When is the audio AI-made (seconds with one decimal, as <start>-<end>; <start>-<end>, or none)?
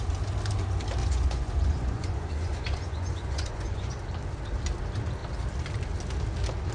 1.0-3.9